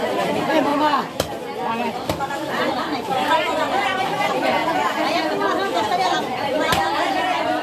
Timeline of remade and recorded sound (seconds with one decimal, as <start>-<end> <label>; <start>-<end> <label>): 0.0-0.7 remade; 0.7-2.7 recorded; 2.7-4.6 remade; 4.6-6.2 recorded; 6.2-7.6 remade